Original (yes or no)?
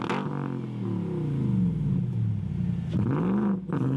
yes